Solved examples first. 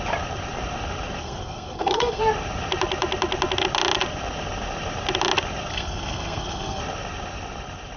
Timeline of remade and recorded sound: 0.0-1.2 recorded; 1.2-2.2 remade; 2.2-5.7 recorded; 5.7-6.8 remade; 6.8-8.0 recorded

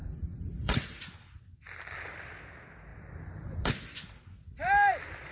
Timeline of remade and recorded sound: 0.0-1.0 remade; 1.0-5.3 recorded

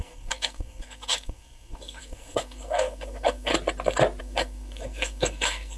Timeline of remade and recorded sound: 0.0-3.5 remade; 3.5-4.2 recorded; 4.2-5.8 remade

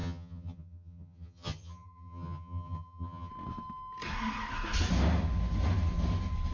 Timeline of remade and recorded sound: 0.0-3.3 remade; 3.3-6.5 recorded